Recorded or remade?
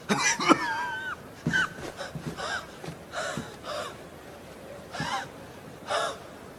recorded